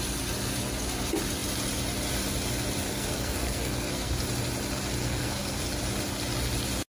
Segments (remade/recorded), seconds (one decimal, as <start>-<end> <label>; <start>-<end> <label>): 0.0-2.9 recorded; 2.9-4.2 remade; 4.2-5.0 recorded; 5.0-5.6 remade; 5.6-6.9 recorded